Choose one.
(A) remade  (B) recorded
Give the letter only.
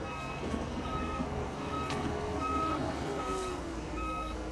A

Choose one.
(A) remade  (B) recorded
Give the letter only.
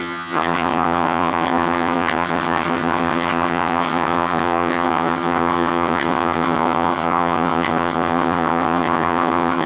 A